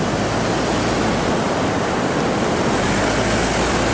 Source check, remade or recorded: recorded